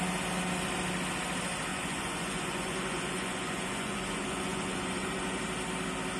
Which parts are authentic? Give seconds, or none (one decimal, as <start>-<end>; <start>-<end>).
0.0-1.7; 5.4-6.2